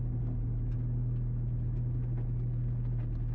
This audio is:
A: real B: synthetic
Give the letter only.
A